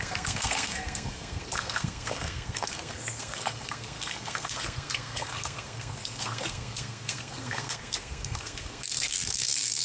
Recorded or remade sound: remade